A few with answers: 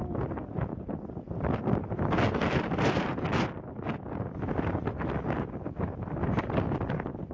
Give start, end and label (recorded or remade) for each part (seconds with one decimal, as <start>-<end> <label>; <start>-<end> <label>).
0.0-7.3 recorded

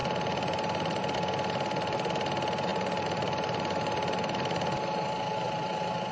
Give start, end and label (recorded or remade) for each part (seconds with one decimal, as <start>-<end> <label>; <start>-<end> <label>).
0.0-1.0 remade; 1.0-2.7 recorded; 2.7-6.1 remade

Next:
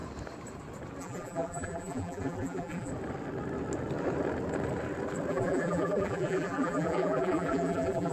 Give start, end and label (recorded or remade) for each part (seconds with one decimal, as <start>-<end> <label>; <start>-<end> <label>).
0.0-1.0 recorded; 1.0-2.9 remade; 2.9-5.3 recorded; 5.3-8.1 remade